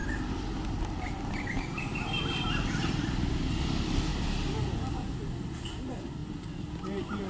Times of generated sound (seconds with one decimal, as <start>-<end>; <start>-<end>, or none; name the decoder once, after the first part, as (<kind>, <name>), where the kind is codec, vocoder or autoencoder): none